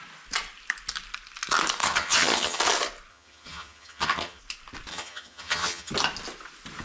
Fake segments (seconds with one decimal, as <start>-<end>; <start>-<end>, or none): 1.8-2.6; 3.1-4.4; 4.9-5.9